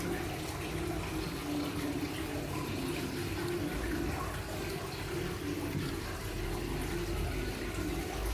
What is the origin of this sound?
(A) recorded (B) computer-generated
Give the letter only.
A